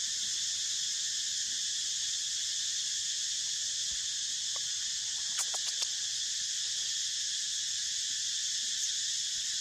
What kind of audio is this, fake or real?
real